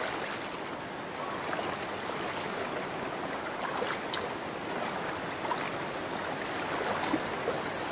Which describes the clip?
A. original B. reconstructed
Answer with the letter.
A